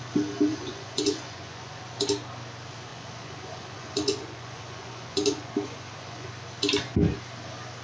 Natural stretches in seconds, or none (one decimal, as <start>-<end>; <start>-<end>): 0.0-0.5; 1.8-2.9; 6.3-7.8